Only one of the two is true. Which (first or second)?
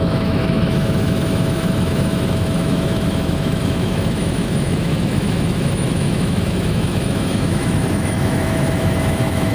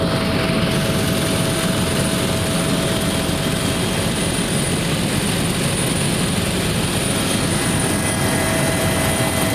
second